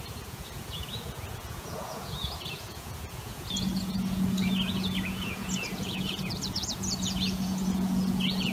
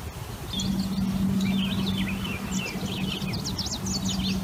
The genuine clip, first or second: second